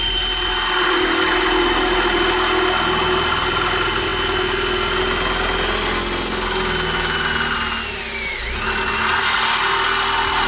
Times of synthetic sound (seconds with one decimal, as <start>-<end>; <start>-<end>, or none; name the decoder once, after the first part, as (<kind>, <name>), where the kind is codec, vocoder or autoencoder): none

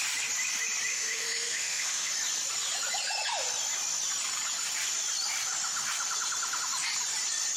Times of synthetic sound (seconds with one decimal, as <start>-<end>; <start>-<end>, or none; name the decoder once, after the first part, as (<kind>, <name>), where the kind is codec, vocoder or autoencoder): 0.9-2.1 (autoencoder, DAC-VAE)

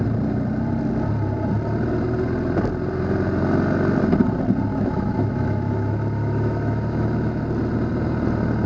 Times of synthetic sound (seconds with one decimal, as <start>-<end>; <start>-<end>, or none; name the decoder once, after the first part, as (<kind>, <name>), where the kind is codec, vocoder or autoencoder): 4.7-7.4 (autoencoder, DAC-VAE)

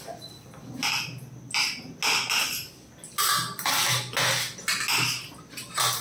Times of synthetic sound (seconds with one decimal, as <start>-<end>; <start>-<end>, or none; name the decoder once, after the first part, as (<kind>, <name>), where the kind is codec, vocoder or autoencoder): none

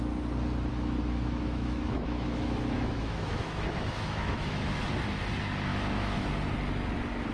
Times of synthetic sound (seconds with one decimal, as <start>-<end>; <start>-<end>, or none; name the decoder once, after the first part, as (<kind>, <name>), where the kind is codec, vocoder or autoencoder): 0.7-4.8 (autoencoder, DAC-VAE); 5.7-6.3

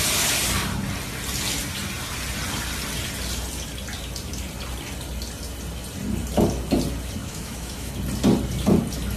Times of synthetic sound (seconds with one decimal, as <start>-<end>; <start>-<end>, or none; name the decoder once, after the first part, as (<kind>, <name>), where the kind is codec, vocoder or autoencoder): 7.2-7.9 (autoencoder, DAC-VAE)

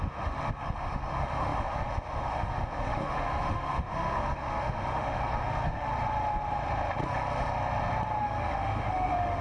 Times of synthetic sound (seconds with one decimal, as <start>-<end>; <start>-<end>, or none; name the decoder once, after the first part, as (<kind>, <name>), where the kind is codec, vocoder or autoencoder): 0.0-5.9 (autoencoder, DAC-VAE); 8.2-9.4